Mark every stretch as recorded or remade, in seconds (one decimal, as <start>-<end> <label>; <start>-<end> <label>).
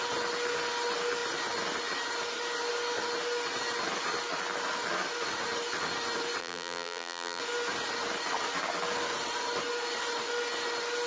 0.0-6.4 recorded; 6.4-7.4 remade; 7.4-11.1 recorded